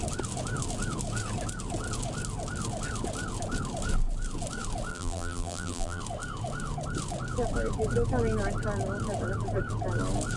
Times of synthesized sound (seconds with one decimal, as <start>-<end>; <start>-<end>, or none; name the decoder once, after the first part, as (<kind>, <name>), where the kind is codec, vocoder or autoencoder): 4.9-6.0 (vocoder, BigVGAN v2)